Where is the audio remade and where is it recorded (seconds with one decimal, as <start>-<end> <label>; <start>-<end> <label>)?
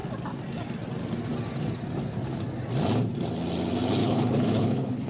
0.0-4.0 recorded; 4.0-5.1 remade